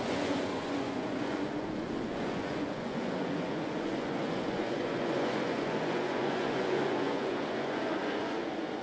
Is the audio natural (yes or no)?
no